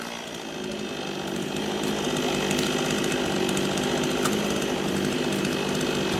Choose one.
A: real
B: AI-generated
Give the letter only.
A